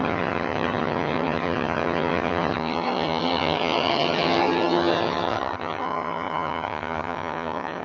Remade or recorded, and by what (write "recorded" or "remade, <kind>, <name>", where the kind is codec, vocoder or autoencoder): remade, vocoder, HiFi-GAN